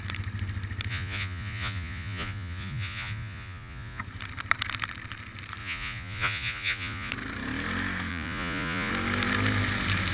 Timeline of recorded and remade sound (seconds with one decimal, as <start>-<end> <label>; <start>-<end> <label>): 0.0-0.9 recorded; 0.9-4.0 remade; 4.0-5.6 recorded; 5.6-7.1 remade; 7.1-8.1 recorded; 8.1-8.9 remade; 8.9-10.1 recorded